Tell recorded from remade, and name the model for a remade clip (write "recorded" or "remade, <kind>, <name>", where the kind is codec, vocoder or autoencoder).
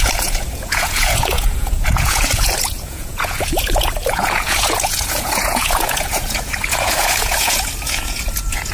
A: remade, vocoder, Vocos